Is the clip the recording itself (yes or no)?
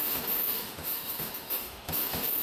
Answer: no